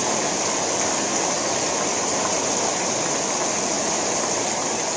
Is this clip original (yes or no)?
yes